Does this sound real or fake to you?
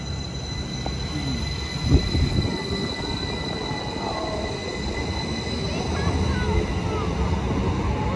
real